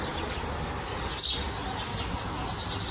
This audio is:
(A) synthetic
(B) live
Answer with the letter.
B